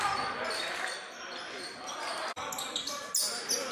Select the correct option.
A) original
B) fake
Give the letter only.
A